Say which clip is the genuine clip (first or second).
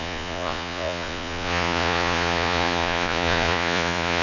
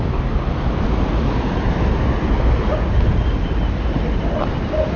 second